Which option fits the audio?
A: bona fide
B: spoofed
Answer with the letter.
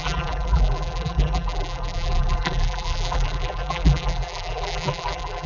B